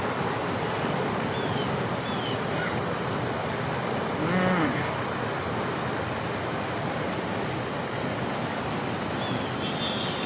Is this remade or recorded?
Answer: recorded